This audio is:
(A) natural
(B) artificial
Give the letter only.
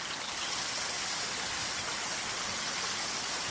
A